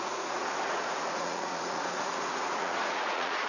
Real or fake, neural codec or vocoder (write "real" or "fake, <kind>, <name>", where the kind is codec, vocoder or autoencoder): fake, vocoder, Vocos